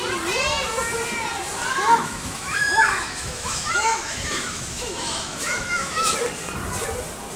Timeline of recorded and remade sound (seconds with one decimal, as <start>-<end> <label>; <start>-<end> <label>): 0.0-1.7 recorded; 1.7-6.1 remade; 6.1-7.4 recorded